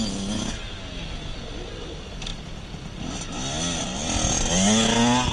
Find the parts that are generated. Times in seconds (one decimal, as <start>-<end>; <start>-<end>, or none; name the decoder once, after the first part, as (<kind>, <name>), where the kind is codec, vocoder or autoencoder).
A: none